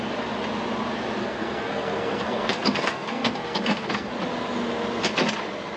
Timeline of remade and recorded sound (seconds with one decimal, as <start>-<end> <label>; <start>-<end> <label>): 0.0-1.2 recorded; 1.2-4.1 remade; 4.1-5.8 recorded